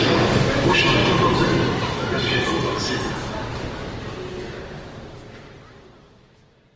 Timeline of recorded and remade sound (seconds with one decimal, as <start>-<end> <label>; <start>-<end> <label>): 0.0-6.8 recorded

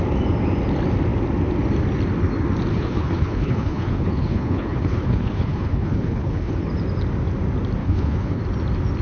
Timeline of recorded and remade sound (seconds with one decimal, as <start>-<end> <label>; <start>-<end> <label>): 0.0-2.7 recorded; 2.7-6.7 remade; 6.7-7.8 recorded; 7.8-8.4 remade; 8.4-9.0 recorded

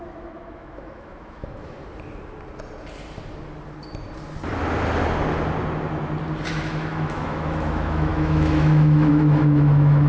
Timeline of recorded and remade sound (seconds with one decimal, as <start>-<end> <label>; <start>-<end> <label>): 0.0-1.8 remade; 1.8-6.5 recorded; 6.5-10.1 remade